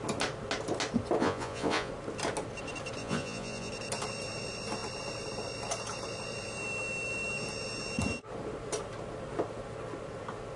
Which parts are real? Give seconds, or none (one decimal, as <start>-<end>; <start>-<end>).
0.0-1.2; 1.9-3.0; 3.7-10.6